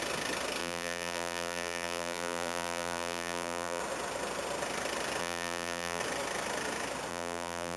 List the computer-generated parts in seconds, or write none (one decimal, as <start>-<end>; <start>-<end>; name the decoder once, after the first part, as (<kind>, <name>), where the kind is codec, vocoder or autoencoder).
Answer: 0.6-3.8 (vocoder, BigVGAN v2); 5.2-6.0; 7.1-7.8